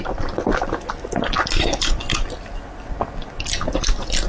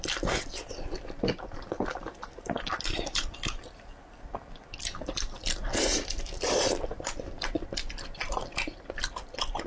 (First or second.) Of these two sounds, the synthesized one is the second